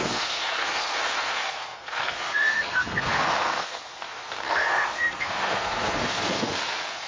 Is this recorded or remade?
remade